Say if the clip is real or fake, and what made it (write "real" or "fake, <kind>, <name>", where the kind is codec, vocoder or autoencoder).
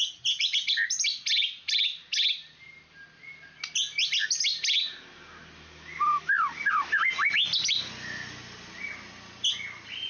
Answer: real